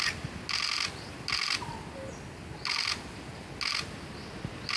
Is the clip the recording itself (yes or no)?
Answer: yes